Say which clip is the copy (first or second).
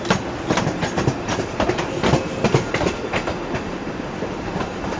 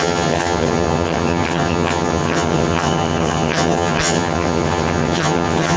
second